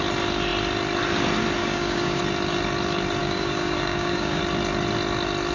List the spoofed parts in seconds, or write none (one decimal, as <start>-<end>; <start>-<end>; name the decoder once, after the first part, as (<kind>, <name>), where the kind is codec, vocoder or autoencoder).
1.6-2.2 (codec, DAC); 3.2-4.4